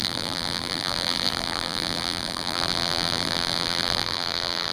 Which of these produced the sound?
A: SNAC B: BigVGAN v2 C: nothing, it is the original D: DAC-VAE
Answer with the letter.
B